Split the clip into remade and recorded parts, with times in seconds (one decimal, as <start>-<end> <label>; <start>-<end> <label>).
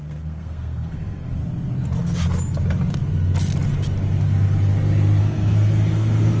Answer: 0.0-1.4 remade; 1.4-5.2 recorded; 5.2-6.4 remade